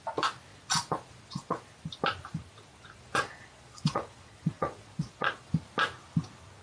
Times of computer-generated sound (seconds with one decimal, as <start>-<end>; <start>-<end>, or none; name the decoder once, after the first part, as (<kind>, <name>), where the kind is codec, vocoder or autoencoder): 0.5-1.6 (vocoder, Vocos); 2.7-5.5